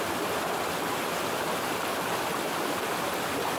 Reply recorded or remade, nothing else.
recorded